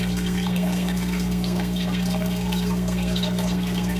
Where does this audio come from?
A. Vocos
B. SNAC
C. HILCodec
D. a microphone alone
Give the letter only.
B